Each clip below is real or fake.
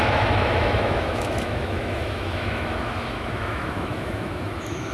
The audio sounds fake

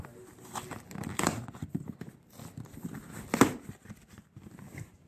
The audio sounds real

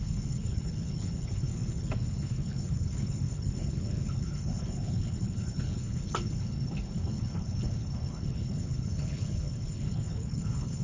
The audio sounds fake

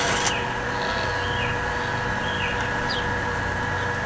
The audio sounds real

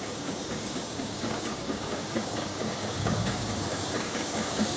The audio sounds fake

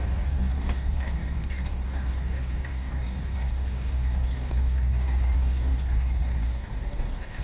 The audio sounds fake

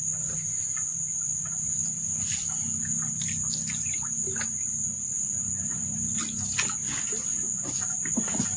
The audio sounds real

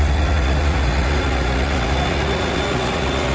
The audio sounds fake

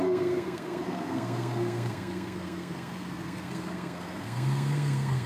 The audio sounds fake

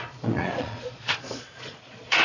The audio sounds fake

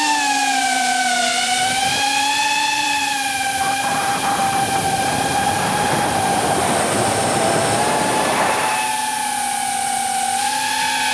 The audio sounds fake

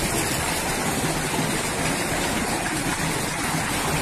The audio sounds real